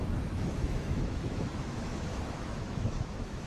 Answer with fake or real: fake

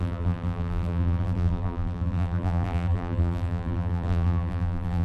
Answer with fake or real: fake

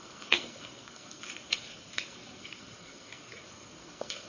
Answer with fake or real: fake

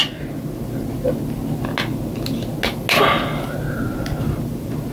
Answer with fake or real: real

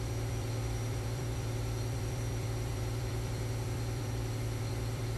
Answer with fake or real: fake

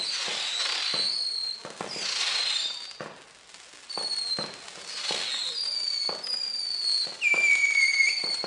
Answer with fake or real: real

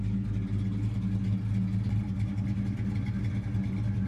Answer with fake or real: real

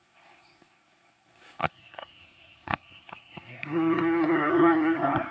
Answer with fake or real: fake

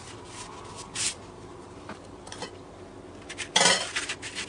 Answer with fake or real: real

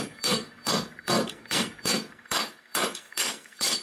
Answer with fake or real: fake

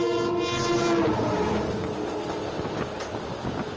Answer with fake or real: real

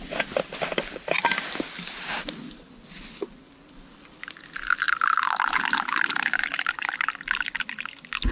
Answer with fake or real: real